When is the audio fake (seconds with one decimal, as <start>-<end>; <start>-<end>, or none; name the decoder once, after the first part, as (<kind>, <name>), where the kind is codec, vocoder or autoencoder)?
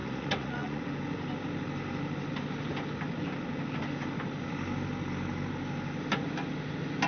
0.0-0.8 (vocoder, Vocos)